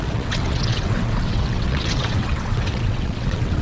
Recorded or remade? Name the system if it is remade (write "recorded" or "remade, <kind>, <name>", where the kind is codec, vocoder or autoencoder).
remade, vocoder, WaveNeXt